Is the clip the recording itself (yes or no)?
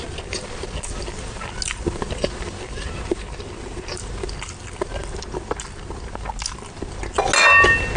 yes